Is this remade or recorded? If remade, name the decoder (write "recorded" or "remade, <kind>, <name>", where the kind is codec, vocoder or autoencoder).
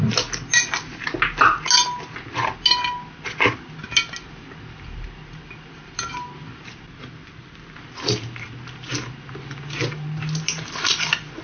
recorded